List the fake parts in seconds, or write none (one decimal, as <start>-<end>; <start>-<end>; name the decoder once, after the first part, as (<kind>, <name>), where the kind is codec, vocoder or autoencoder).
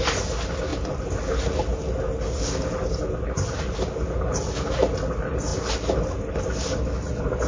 none